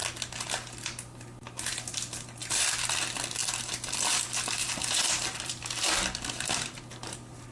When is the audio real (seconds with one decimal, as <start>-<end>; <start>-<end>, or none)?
0.0-3.4; 5.9-7.5

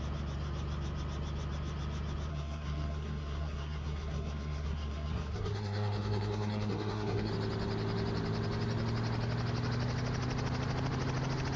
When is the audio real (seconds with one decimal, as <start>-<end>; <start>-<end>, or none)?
0.0-2.3; 7.3-11.6

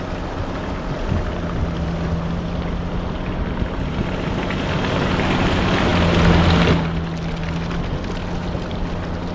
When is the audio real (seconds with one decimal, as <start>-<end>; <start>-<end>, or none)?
0.0-9.3

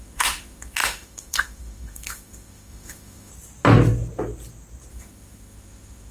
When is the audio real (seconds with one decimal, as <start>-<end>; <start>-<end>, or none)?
3.3-4.9

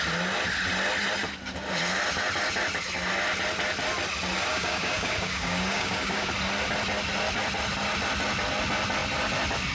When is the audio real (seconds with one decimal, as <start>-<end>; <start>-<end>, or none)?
0.0-4.5; 6.3-9.7

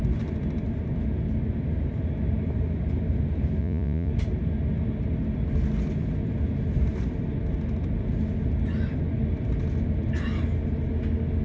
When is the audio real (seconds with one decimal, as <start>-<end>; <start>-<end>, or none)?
0.0-3.6; 4.1-11.4

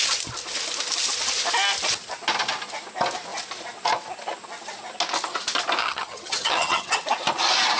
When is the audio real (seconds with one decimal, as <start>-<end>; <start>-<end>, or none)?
0.0-5.8; 6.9-7.8